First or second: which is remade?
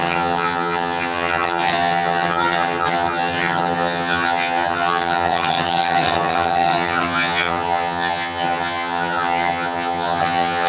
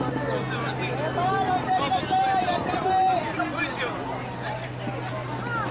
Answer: first